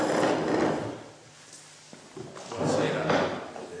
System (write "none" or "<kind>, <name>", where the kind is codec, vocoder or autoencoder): none